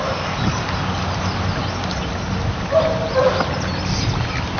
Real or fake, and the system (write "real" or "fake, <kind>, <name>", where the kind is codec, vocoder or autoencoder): real